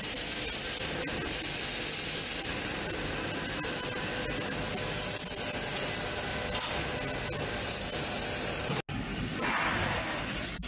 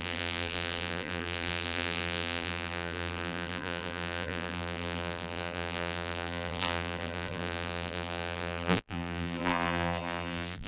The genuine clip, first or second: first